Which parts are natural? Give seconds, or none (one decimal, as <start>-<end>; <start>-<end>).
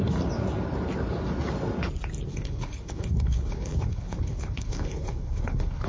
0.0-2.3